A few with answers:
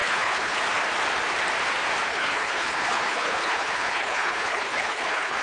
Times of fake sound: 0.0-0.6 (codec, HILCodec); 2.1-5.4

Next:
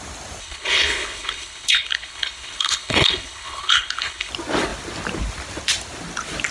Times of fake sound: 0.4-4.3 (codec, HILCodec)